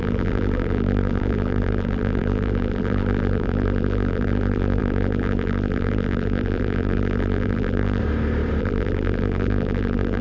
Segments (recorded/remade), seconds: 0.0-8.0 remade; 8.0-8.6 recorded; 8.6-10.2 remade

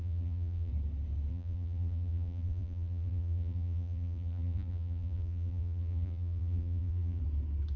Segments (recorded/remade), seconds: 0.0-0.7 remade; 0.7-1.3 recorded; 1.3-7.2 remade; 7.2-7.8 recorded